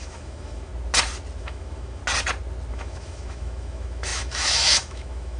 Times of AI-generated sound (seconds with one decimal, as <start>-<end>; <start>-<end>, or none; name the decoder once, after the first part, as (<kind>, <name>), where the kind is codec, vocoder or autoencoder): 0.0-0.7 (autoencoder, DAC-VAE); 1.4-2.0; 2.7-5.4